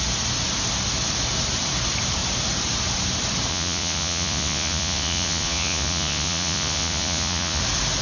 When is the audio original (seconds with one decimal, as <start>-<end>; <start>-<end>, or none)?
0.0-3.5; 7.6-8.0